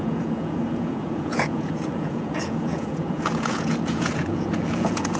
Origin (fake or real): fake